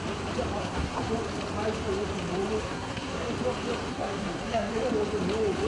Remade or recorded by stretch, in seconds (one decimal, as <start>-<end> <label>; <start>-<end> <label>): 0.0-0.6 recorded; 0.6-1.1 remade; 1.1-2.6 recorded; 2.6-3.3 remade; 3.3-3.9 recorded; 3.9-4.7 remade; 4.7-5.7 recorded